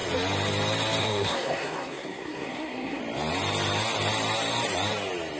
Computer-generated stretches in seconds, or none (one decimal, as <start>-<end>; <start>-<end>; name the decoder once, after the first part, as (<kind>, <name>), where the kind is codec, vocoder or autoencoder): 1.0-3.0 (codec, SNAC)